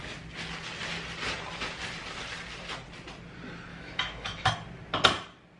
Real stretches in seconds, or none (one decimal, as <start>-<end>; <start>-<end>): 0.0-3.7; 4.5-5.6